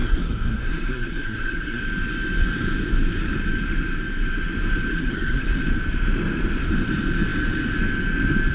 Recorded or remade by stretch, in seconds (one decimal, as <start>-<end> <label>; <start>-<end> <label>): 0.0-1.8 remade; 1.8-4.9 recorded; 4.9-5.6 remade; 5.6-8.5 recorded